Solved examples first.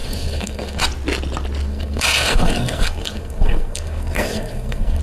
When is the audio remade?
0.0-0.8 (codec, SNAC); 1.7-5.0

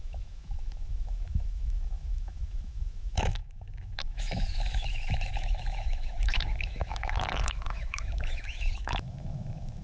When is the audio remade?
0.0-9.8 (autoencoder, DAC-VAE)

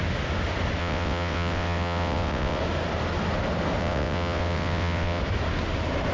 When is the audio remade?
0.8-2.6 (vocoder, WaveNeXt); 3.8-5.2

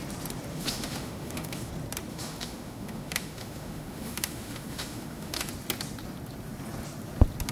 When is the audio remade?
0.5-1.7 (autoencoder, DAC-VAE); 2.1-5.5